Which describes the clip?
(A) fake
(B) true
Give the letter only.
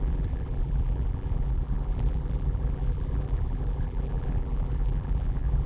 A